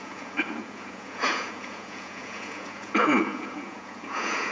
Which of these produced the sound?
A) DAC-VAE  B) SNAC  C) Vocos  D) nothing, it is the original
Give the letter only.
C